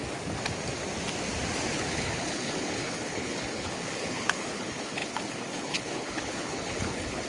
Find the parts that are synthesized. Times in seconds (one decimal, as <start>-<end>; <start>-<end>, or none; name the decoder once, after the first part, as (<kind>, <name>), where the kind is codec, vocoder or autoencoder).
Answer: 1.7-7.3 (codec, HILCodec)